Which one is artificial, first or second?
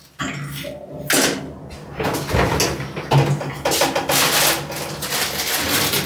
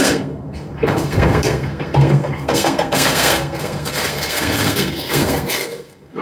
second